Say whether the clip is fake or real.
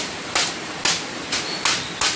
real